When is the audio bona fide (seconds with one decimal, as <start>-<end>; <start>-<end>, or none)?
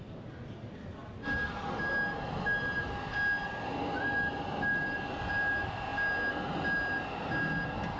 0.0-8.0